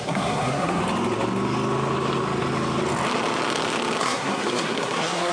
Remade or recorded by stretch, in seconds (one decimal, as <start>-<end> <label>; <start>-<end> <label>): 0.0-0.8 remade; 0.8-4.0 recorded; 4.0-5.3 remade